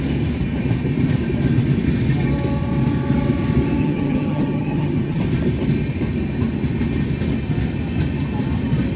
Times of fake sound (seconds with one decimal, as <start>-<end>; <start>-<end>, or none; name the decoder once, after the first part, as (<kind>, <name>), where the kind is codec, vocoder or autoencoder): 3.8-5.2 (vocoder, HiFi-GAN)